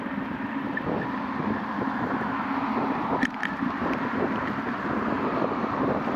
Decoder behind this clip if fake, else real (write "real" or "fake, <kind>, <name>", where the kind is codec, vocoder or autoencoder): fake, vocoder, BigVGAN v2